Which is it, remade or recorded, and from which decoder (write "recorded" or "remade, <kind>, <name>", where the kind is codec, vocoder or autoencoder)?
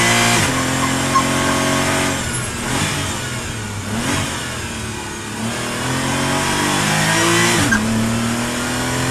recorded